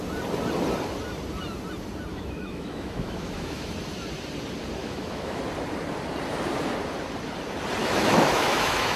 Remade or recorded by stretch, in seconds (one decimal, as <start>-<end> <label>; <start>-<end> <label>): 0.0-2.1 recorded; 2.1-3.7 remade; 3.7-4.8 recorded; 4.8-5.4 remade; 5.4-7.8 recorded; 7.8-9.0 remade